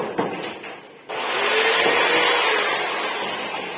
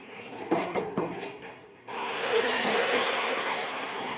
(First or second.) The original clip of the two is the first